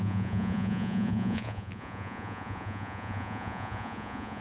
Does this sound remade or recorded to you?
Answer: remade